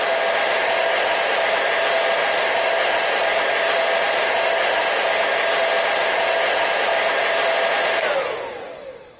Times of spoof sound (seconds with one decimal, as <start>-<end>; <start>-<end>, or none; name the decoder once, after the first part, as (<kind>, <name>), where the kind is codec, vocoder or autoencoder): none